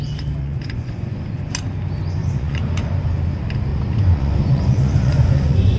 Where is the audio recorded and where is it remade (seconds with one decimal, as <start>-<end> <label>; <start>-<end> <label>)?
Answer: 0.0-0.4 recorded; 0.4-1.5 remade; 1.5-2.2 recorded; 2.2-2.9 remade; 2.9-3.7 recorded; 3.7-5.8 remade